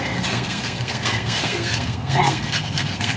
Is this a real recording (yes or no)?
no